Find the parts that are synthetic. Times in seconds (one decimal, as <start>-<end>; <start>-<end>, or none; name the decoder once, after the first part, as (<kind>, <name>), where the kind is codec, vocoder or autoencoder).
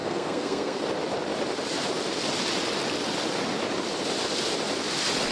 0.0-0.8 (codec, SNAC)